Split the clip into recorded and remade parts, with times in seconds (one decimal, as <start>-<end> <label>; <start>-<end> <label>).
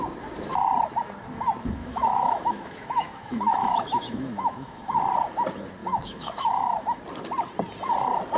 0.0-1.8 recorded; 1.8-5.0 remade; 5.0-5.8 recorded; 5.8-7.0 remade; 7.0-8.4 recorded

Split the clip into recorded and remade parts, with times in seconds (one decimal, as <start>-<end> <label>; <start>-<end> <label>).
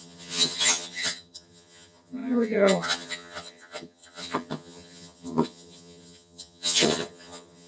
0.0-7.7 remade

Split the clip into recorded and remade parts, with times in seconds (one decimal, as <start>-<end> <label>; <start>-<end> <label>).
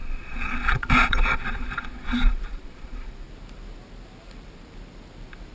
0.0-3.3 remade; 3.3-5.5 recorded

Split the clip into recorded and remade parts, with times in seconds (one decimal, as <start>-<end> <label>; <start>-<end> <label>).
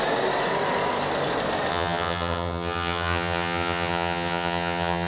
0.0-1.7 recorded; 1.7-5.1 remade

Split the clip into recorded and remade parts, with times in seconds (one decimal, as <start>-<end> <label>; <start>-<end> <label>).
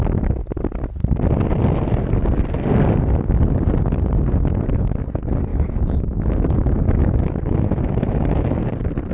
0.0-5.5 recorded; 5.5-8.6 remade; 8.6-9.1 recorded